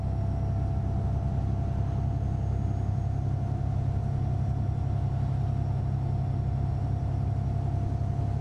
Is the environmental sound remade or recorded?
recorded